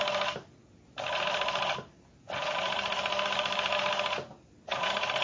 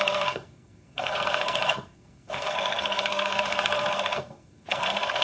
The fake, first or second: second